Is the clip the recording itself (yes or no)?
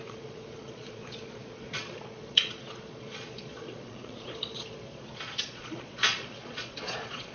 no